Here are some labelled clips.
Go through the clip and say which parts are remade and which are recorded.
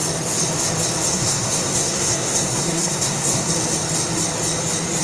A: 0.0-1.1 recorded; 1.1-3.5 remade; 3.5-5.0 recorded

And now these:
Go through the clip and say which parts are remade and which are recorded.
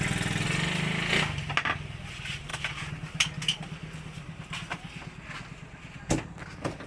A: 0.0-6.9 recorded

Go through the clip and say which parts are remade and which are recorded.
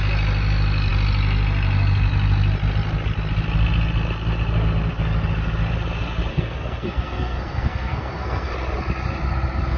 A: 0.0-6.3 recorded; 6.3-8.5 remade; 8.5-9.8 recorded